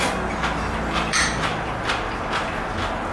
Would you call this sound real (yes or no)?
yes